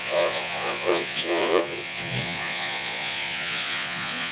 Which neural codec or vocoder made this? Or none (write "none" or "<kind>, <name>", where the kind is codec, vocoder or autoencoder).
vocoder, Vocos